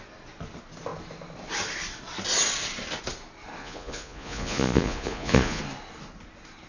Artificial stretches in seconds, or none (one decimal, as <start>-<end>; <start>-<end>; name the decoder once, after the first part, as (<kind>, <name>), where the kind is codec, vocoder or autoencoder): 3.6-5.6 (vocoder, Vocos)